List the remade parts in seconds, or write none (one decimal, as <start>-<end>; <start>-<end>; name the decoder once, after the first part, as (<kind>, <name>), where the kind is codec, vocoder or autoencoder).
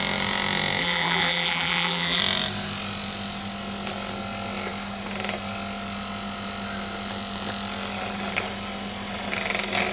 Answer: 0.8-2.2 (vocoder, BigVGAN v2)